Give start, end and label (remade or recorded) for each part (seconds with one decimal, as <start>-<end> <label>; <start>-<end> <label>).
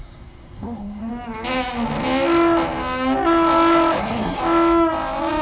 0.0-1.1 remade; 1.1-4.0 recorded; 4.0-4.4 remade; 4.4-5.4 recorded